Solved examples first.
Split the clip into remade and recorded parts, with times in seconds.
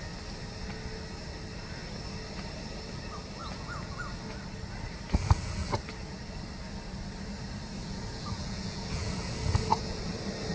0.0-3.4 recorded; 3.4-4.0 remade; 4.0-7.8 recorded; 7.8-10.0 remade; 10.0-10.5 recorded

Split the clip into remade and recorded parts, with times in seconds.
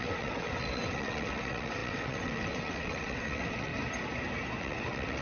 0.0-3.7 remade; 3.7-4.6 recorded; 4.6-5.2 remade